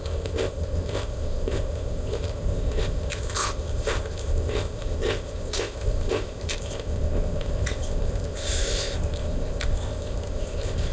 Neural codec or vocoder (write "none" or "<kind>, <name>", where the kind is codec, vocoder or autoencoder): codec, ZipCodec